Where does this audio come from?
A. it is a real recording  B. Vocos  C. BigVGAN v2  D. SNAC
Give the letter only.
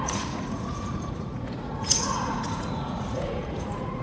B